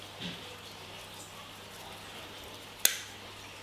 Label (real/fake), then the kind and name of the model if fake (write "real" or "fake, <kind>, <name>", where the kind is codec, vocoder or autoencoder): real